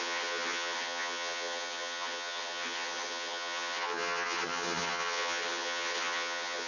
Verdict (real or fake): fake